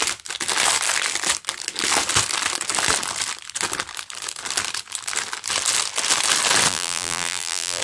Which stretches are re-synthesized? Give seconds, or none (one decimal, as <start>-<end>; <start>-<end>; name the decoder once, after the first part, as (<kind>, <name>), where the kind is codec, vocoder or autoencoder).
6.7-7.8 (vocoder, BigVGAN v2)